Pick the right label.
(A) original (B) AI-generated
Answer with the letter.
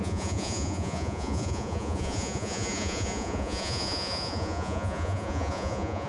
B